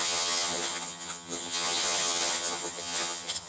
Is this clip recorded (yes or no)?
no